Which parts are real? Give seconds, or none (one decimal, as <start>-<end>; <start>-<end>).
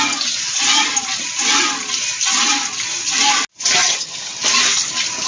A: 0.0-3.8; 4.4-5.3